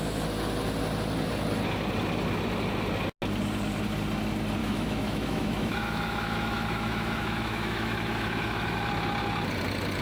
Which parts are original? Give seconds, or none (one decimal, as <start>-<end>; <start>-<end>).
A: 0.0-4.6; 8.9-10.0